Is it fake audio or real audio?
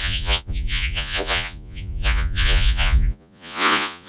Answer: fake